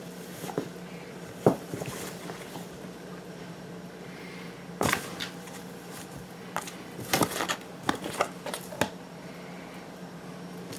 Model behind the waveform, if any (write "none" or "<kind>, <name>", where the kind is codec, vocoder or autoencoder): none